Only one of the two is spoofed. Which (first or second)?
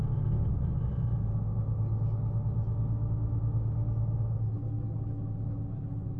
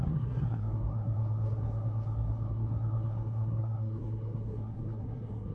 second